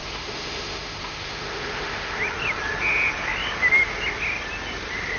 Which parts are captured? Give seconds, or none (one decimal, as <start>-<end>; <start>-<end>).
2.2-5.2